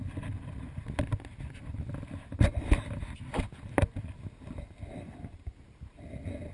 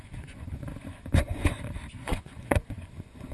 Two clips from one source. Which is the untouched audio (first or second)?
first